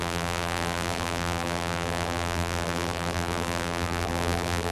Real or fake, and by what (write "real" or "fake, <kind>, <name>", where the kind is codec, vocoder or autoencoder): fake, vocoder, BigVGAN v2